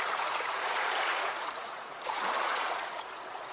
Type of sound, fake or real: fake